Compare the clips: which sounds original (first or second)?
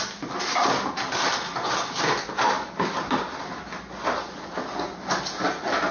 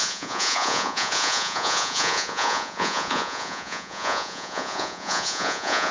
first